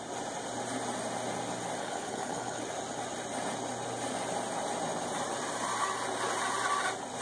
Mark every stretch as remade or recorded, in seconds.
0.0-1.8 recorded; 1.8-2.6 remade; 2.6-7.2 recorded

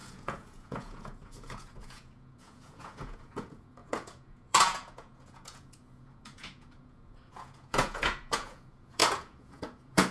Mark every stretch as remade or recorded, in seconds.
0.0-10.1 remade

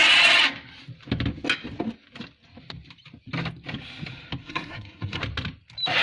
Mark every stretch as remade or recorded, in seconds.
0.0-4.4 recorded; 4.4-5.2 remade; 5.2-6.0 recorded

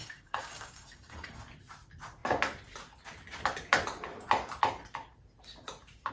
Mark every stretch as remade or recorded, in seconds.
0.0-1.4 remade; 1.4-6.1 recorded

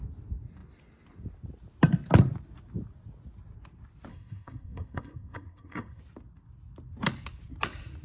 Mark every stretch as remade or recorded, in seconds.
0.0-4.1 recorded; 4.1-6.0 remade; 6.0-8.0 recorded

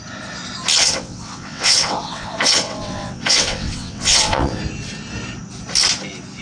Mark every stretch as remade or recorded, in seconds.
0.0-0.8 recorded; 0.8-4.6 remade; 4.6-6.4 recorded